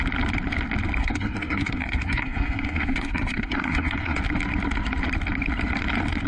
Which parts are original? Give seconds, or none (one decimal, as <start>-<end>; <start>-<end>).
0.0-1.0; 4.2-6.3